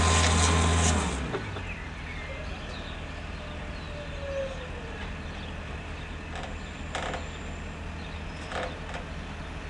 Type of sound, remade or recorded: recorded